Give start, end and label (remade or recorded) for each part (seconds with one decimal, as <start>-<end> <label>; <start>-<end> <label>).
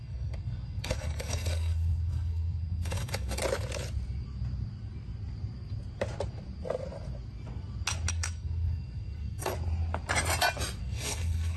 0.0-3.4 remade; 3.4-8.1 recorded; 8.1-9.5 remade; 9.5-10.8 recorded; 10.8-11.6 remade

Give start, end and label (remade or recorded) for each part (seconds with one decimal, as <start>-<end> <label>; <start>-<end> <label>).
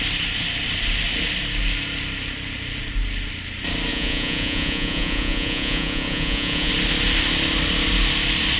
0.0-3.9 recorded; 3.9-6.7 remade; 6.7-8.6 recorded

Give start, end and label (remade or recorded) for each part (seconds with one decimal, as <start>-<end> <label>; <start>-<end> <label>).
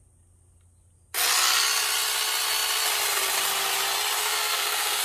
0.0-4.2 recorded; 4.2-5.0 remade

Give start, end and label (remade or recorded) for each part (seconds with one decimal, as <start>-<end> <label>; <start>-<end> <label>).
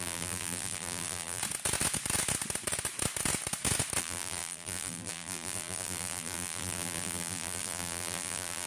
0.0-1.4 remade; 1.4-4.0 recorded; 4.0-8.7 remade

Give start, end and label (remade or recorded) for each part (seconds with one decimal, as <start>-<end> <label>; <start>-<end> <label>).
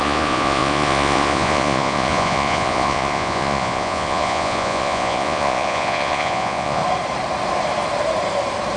0.0-6.8 remade; 6.8-8.8 recorded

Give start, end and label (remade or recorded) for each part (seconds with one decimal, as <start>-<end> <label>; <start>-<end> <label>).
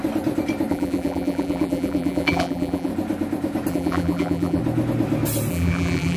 0.0-0.7 recorded; 0.7-2.9 remade; 2.9-3.7 recorded; 3.7-4.6 remade; 4.6-5.5 recorded; 5.5-6.2 remade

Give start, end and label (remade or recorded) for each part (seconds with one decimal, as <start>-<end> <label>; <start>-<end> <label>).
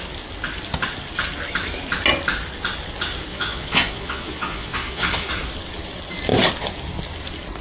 0.0-3.3 recorded; 3.3-5.3 remade; 5.3-7.6 recorded